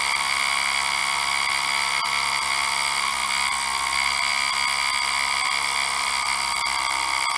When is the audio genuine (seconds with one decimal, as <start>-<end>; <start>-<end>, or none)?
0.0-7.4